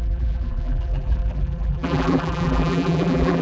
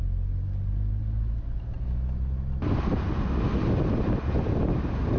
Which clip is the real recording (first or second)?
second